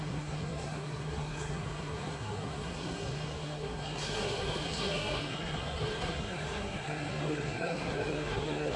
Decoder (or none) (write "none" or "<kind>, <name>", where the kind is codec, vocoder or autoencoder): codec, SNAC